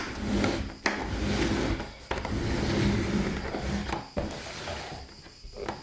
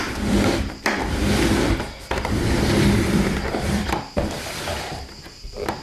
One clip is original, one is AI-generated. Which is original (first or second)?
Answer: first